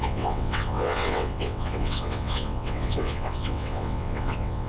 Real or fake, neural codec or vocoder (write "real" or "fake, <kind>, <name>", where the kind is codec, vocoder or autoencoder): fake, vocoder, WaveNeXt